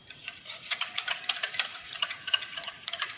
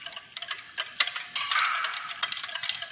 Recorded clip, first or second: second